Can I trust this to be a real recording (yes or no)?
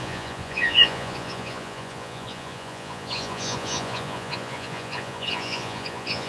no